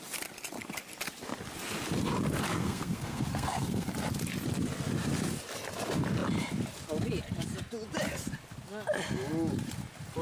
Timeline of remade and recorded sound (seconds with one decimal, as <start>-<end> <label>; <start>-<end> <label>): 0.0-2.6 recorded; 2.6-3.9 remade; 3.9-10.2 recorded